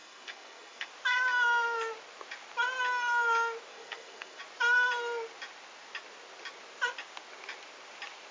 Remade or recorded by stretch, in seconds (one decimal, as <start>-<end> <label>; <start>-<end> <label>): 0.0-0.9 remade; 0.9-3.7 recorded; 3.7-4.4 remade; 4.4-8.3 recorded